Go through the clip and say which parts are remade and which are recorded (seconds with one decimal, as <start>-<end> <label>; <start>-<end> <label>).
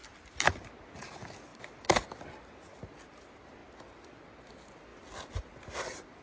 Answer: 0.0-6.2 recorded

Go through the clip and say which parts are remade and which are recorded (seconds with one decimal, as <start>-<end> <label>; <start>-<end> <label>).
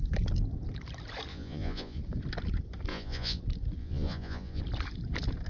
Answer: 0.0-1.3 recorded; 1.3-2.0 remade; 2.0-2.9 recorded; 2.9-3.4 remade; 3.4-3.8 recorded; 3.8-4.6 remade; 4.6-5.5 recorded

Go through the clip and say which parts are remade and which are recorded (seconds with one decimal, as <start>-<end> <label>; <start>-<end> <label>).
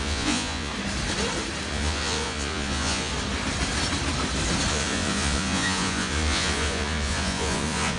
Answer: 0.0-0.7 remade; 0.7-1.7 recorded; 1.7-3.1 remade; 3.1-4.7 recorded; 4.7-8.0 remade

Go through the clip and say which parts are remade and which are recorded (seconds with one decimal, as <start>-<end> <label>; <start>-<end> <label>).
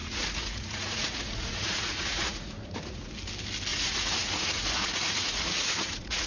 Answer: 0.0-3.1 remade; 3.1-3.7 recorded; 3.7-6.3 remade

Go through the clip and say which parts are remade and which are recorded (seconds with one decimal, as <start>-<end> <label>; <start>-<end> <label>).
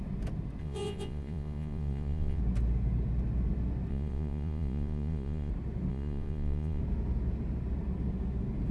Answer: 0.0-0.6 recorded; 0.6-2.4 remade; 2.4-3.9 recorded; 3.9-5.5 remade; 5.5-5.9 recorded; 5.9-6.8 remade; 6.8-8.7 recorded